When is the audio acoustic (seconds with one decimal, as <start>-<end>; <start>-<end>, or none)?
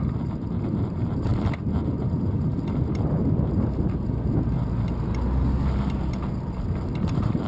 0.0-0.7; 1.3-1.9; 2.5-7.0